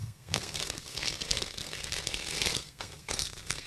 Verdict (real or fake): fake